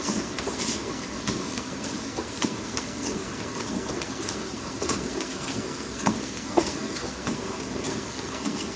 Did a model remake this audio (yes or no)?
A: yes